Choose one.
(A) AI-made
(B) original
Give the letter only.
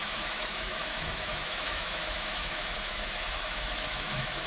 A